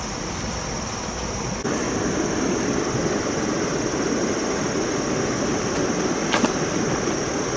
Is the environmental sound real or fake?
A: real